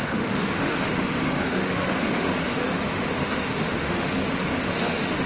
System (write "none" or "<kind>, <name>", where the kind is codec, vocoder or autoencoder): autoencoder, DAC-VAE